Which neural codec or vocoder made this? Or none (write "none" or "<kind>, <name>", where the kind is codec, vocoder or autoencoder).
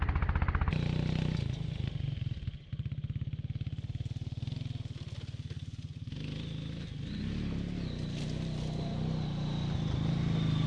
none